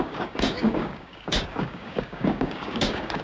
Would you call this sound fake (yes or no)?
yes